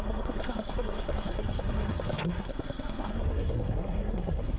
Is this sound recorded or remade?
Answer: remade